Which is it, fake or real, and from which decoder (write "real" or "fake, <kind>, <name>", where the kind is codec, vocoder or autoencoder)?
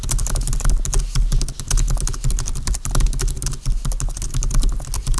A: real